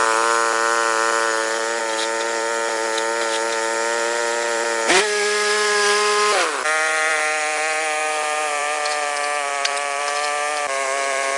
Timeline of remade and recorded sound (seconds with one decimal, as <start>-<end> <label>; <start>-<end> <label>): 0.0-1.8 recorded; 1.8-11.4 remade